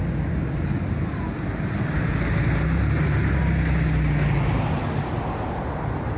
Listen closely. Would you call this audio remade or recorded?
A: recorded